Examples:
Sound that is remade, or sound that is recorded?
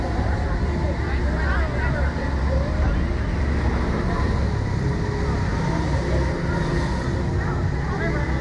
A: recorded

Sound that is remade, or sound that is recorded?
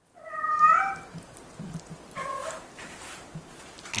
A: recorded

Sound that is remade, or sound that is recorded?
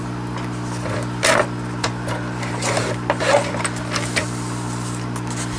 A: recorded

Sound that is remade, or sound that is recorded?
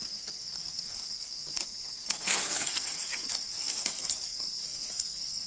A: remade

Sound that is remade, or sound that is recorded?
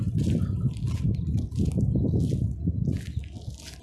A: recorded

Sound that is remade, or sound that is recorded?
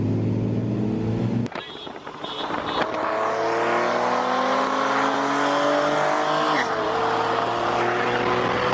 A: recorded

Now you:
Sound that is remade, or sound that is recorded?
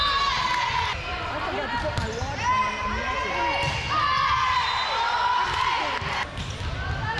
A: recorded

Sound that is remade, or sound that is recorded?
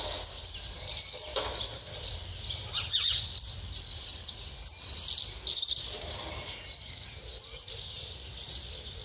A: recorded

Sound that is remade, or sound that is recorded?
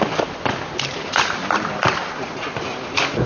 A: recorded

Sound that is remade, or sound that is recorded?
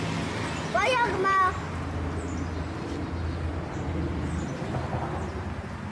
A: recorded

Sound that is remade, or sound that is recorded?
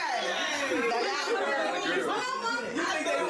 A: recorded